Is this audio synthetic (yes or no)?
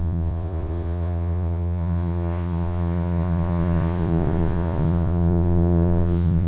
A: yes